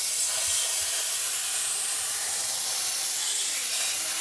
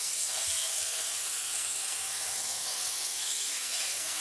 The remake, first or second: second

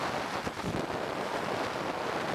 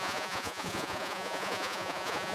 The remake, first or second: second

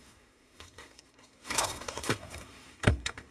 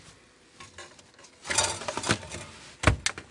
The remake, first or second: first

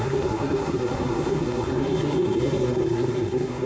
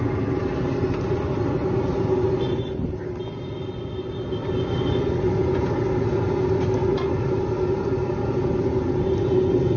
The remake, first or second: first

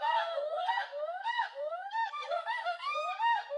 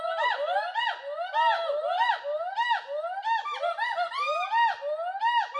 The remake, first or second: first